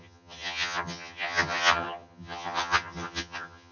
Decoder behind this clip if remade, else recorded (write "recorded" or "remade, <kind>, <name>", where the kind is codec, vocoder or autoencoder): remade, vocoder, HiFi-GAN